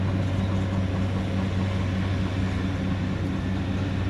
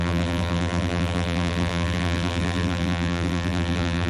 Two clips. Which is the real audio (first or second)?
first